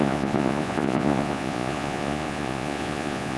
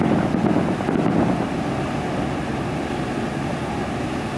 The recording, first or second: second